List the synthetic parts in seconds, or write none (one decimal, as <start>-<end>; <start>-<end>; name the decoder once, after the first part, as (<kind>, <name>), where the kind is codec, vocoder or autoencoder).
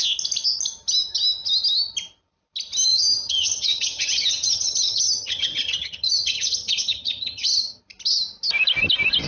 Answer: 2.9-7.8 (vocoder, HiFi-GAN)